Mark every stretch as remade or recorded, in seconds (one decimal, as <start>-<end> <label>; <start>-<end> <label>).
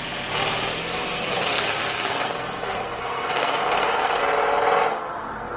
0.0-0.8 recorded; 0.8-4.2 remade; 4.2-4.9 recorded; 4.9-5.6 remade